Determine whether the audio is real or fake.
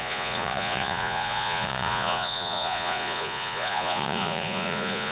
fake